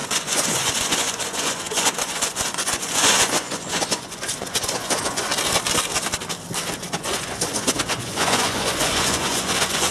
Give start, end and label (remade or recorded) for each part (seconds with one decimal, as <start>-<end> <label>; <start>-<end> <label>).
0.0-5.3 remade; 5.3-6.8 recorded; 6.8-9.9 remade